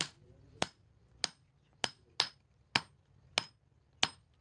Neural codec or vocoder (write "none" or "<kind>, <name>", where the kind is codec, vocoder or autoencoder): none